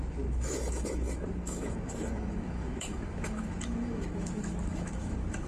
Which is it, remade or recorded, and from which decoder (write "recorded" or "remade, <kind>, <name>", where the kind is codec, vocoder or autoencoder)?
remade, autoencoder, DAC-VAE